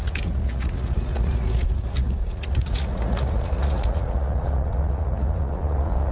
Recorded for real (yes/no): no